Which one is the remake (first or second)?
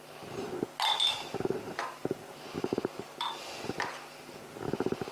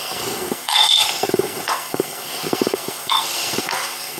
second